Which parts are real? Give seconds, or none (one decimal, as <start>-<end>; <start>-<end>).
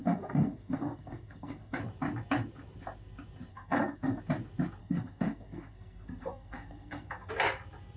1.8-3.5; 4.2-4.8; 7.3-8.0